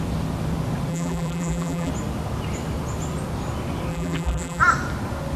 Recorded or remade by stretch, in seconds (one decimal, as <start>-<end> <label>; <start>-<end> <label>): 0.0-0.9 recorded; 0.9-1.9 remade; 1.9-3.9 recorded; 3.9-4.6 remade; 4.6-5.4 recorded